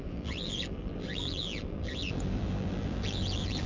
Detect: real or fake fake